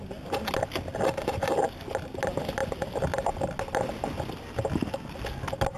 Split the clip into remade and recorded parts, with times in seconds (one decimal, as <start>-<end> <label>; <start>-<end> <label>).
0.0-5.8 recorded